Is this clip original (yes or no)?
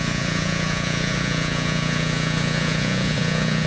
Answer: no